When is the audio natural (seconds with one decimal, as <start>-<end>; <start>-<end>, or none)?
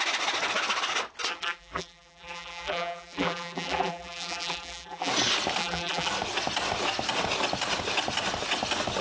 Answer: 0.0-1.3; 5.1-5.6; 6.1-9.0